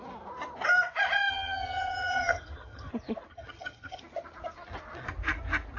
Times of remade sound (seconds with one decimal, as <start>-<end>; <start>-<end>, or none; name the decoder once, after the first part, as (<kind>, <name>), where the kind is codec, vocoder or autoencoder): 1.3-2.9 (vocoder, HiFi-GAN); 3.3-4.0